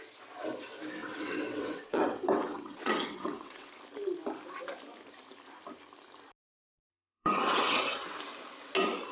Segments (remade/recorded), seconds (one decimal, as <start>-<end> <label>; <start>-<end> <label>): 0.0-1.0 recorded; 1.0-3.7 remade; 3.7-6.9 recorded; 6.9-8.2 remade; 8.2-9.1 recorded